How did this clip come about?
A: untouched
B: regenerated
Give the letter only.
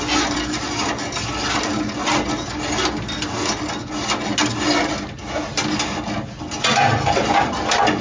A